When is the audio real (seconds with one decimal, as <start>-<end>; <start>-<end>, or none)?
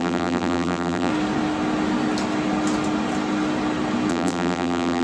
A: 1.1-4.1